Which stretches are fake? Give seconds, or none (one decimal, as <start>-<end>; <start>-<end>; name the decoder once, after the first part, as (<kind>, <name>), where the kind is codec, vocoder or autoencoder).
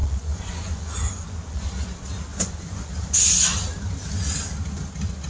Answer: 0.0-1.7 (vocoder, Vocos); 2.3-2.9